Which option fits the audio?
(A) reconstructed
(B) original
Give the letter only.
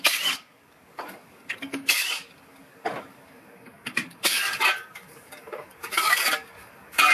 A